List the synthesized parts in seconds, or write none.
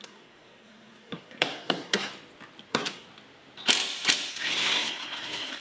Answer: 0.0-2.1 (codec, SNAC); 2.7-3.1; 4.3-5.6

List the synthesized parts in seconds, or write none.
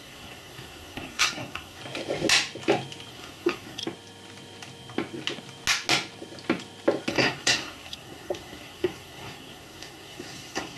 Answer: 0.0-1.8 (codec, SNAC); 3.1-3.8; 7.1-10.8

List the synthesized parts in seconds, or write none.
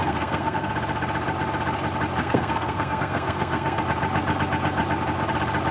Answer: 0.0-0.7 (codec, SNAC); 2.2-3.8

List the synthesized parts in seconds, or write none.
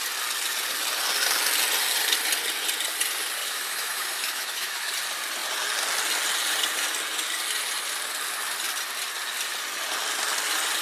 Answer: 3.4-4.9 (autoencoder, DAC-VAE)